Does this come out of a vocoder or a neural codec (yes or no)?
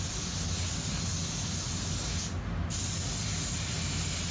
no